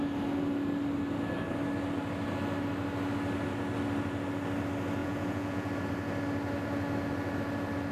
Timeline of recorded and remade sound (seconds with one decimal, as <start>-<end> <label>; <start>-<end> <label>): 0.0-5.0 recorded; 5.0-5.7 remade; 5.7-7.9 recorded